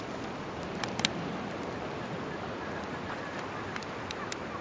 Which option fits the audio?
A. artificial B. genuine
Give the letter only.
B